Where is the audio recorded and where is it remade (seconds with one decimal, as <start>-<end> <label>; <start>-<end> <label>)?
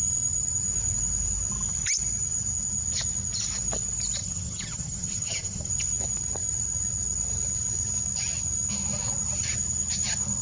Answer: 0.0-4.2 recorded; 4.2-5.7 remade; 5.7-10.4 recorded